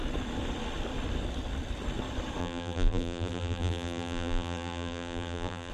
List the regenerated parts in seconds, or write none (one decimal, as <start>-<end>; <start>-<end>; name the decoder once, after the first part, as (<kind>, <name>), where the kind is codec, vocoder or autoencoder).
2.4-5.7 (vocoder, BigVGAN v2)